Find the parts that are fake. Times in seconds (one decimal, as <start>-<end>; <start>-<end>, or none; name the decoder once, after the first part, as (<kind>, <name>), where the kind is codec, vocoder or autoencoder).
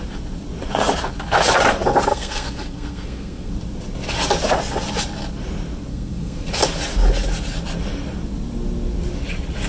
2.1-3.5 (codec, SNAC); 5.9-6.5